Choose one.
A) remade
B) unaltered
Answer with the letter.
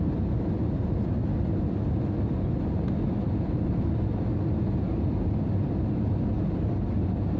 B